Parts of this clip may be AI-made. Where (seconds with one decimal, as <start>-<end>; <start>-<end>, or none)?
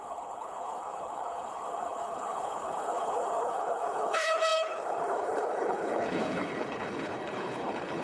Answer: 0.0-8.0